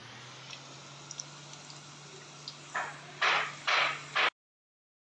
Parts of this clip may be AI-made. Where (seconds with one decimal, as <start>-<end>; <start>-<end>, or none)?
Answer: none